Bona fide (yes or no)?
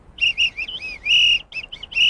yes